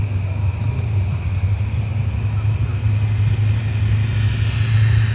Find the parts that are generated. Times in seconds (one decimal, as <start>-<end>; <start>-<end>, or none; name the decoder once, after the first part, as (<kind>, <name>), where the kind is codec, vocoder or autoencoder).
none